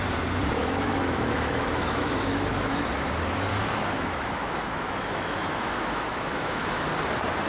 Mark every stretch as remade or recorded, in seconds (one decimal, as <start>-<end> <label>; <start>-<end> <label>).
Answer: 0.0-0.6 recorded; 0.6-2.8 remade; 2.8-3.5 recorded; 3.5-6.9 remade; 6.9-7.5 recorded